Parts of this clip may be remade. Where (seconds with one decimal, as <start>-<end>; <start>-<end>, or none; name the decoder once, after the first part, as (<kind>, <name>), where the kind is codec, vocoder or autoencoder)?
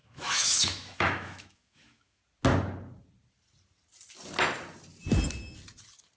0.0-2.2 (autoencoder, DAC-VAE)